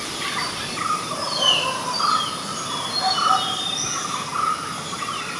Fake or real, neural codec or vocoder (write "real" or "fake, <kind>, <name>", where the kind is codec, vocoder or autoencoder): real